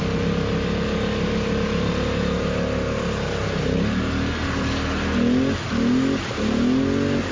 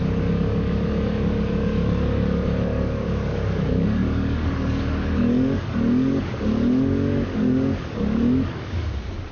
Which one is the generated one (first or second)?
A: second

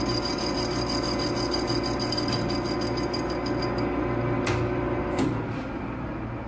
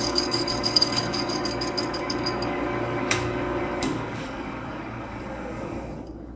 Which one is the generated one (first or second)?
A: second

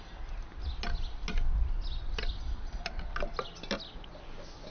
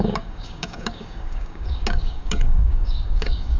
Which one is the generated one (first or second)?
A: second